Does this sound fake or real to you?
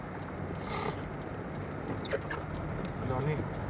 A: real